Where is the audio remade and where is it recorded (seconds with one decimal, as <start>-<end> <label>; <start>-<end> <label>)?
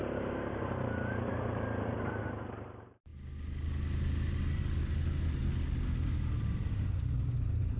0.0-3.1 remade; 3.1-6.7 recorded; 6.7-7.8 remade